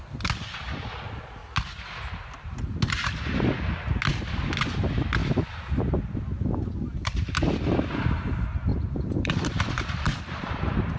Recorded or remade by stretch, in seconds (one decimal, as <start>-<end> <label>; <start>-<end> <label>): 0.0-8.7 recorded; 8.7-11.0 remade